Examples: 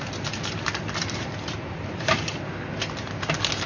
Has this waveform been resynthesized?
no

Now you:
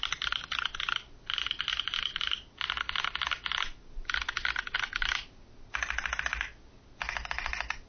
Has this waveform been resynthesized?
no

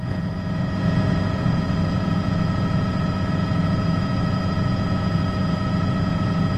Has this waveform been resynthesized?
yes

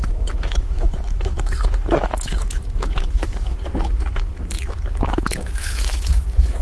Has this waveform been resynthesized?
yes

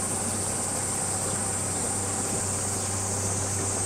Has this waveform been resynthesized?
no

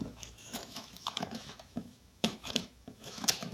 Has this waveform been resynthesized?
yes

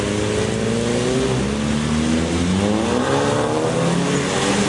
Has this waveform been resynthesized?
no